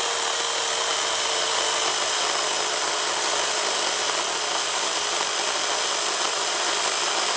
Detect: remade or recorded recorded